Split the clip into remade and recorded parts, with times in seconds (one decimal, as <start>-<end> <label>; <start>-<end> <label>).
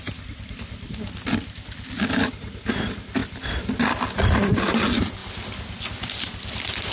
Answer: 0.0-3.2 recorded; 3.2-3.7 remade; 3.7-5.2 recorded; 5.2-6.9 remade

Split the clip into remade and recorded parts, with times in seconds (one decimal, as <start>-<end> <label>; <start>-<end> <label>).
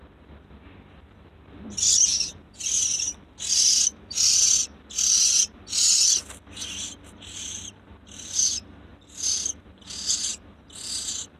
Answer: 0.0-11.4 remade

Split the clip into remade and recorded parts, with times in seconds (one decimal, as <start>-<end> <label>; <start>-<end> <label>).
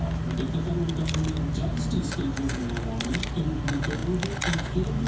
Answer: 0.0-5.1 recorded